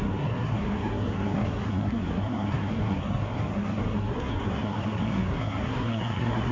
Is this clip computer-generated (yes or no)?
yes